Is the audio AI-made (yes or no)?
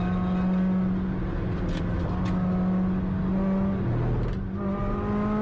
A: no